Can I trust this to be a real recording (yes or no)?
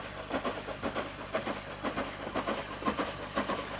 yes